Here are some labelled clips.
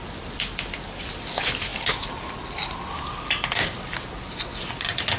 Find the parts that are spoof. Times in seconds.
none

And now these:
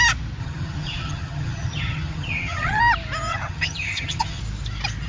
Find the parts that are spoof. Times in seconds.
0.4-2.8 (vocoder, HiFi-GAN); 3.3-4.4

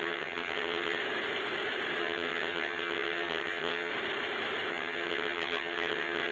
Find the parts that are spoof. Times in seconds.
0.0-1.0 (vocoder, HiFi-GAN); 2.0-3.9; 4.7-6.3

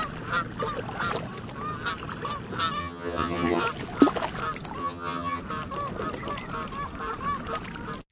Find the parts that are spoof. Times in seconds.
2.8-3.6 (vocoder, HiFi-GAN); 4.8-5.4

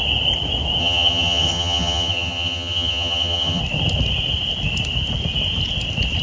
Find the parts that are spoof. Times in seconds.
0.8-3.6 (vocoder, HiFi-GAN)

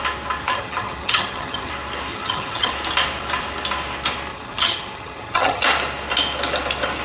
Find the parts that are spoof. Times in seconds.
0.4-1.7 (vocoder, HiFi-GAN); 2.1-2.7; 4.3-5.6